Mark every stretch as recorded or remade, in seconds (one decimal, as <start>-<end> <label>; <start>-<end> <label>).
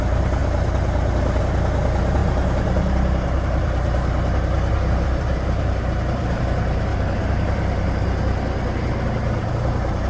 0.0-0.4 recorded; 0.4-1.4 remade; 1.4-2.2 recorded; 2.2-6.4 remade; 6.4-6.9 recorded; 6.9-9.5 remade; 9.5-10.1 recorded